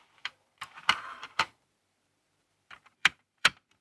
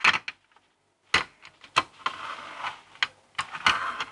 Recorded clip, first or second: second